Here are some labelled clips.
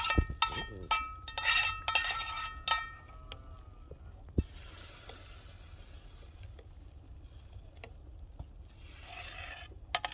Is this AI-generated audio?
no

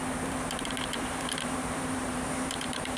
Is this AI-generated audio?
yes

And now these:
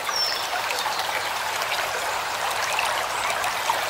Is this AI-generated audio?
yes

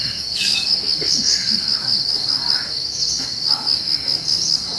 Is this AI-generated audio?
yes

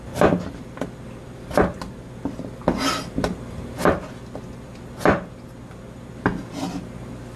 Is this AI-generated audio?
no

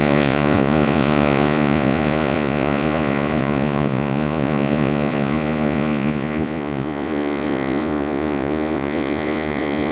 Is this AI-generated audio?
yes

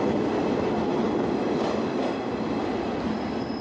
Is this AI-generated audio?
no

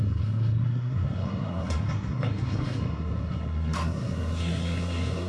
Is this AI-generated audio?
yes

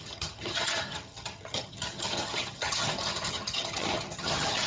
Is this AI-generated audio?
yes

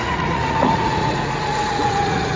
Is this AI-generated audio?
yes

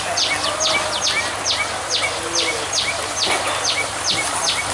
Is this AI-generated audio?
no